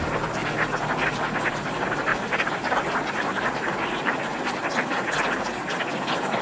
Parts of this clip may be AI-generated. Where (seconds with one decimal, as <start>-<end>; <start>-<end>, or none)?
2.1-5.6